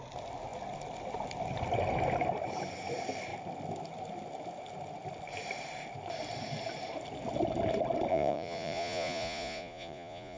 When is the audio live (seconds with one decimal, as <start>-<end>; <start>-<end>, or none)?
0.0-8.1